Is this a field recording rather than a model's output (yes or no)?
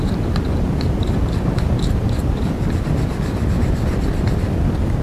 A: no